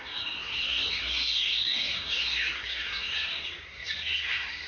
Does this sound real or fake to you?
fake